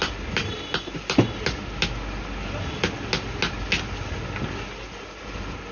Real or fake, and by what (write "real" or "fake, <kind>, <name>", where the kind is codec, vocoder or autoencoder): real